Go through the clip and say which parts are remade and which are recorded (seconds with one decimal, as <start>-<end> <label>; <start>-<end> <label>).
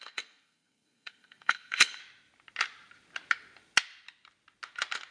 0.0-2.0 remade; 2.0-5.1 recorded